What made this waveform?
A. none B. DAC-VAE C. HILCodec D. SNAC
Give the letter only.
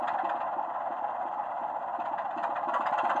A